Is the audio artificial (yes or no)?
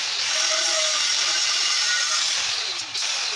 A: yes